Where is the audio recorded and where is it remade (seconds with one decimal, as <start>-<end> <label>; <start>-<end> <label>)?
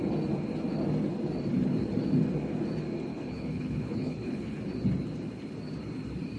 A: 0.0-3.1 recorded; 3.1-4.6 remade; 4.6-6.4 recorded